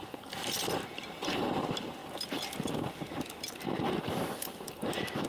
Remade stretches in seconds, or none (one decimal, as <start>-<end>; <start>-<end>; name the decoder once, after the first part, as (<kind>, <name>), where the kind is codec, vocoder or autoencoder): none